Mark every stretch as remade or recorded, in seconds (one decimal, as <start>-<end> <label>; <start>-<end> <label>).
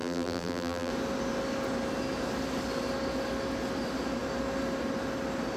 0.0-0.9 remade; 0.9-5.6 recorded